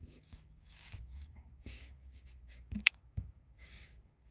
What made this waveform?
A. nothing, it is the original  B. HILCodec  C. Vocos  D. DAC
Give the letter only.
D